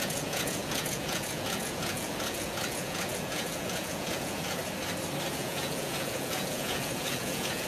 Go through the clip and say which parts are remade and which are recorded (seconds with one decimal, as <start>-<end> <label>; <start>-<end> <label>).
0.0-4.6 remade; 4.6-5.3 recorded; 5.3-7.7 remade